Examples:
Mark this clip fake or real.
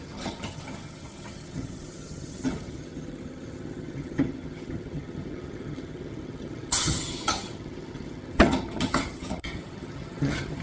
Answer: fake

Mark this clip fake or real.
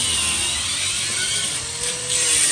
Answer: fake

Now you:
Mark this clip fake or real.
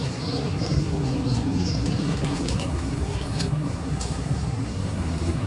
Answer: fake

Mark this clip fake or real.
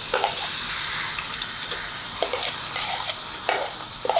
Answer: real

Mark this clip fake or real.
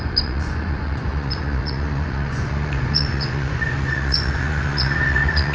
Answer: fake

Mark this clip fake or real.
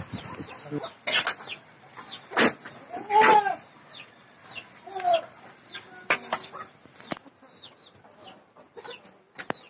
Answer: real